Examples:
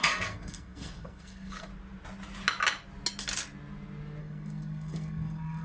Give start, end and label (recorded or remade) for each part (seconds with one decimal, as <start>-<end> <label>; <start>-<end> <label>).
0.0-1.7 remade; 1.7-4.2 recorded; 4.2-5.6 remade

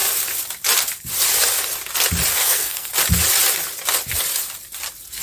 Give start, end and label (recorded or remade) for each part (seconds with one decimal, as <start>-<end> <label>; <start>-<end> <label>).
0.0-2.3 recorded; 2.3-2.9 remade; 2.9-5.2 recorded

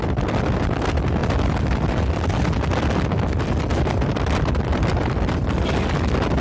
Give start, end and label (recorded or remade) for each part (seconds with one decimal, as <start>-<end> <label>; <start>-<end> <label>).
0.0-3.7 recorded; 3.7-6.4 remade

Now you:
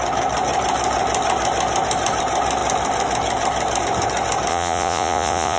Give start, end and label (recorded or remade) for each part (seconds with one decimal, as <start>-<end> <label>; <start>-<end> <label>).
0.0-4.5 recorded; 4.5-5.6 remade

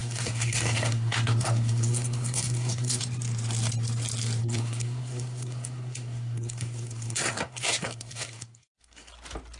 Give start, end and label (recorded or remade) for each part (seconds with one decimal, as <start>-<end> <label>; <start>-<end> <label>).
0.0-3.0 remade; 3.0-4.4 recorded; 4.4-9.1 remade; 9.1-9.6 recorded

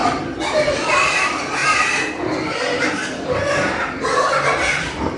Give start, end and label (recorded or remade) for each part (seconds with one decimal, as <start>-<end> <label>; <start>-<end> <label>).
0.0-1.6 remade; 1.6-4.7 recorded; 4.7-5.2 remade

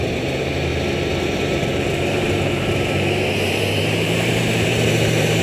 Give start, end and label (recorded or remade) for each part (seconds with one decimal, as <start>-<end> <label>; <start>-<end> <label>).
0.0-5.4 remade